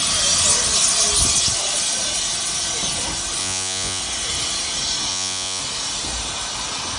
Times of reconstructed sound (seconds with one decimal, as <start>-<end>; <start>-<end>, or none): 3.4-4.0; 5.1-5.6